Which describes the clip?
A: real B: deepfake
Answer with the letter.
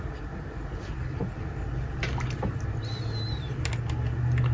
A